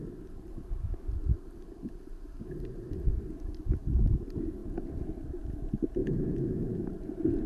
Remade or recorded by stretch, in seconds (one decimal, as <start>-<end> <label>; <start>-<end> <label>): 0.0-6.0 recorded; 6.0-6.9 remade; 6.9-7.5 recorded